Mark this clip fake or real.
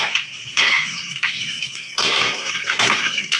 fake